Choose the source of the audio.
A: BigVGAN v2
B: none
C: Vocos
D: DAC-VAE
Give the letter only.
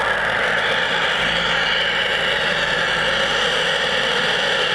B